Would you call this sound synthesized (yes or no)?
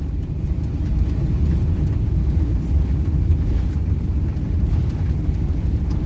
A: no